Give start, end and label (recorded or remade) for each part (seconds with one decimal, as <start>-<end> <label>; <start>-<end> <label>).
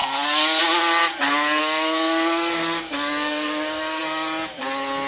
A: 0.0-1.6 recorded; 1.6-4.0 remade; 4.0-5.1 recorded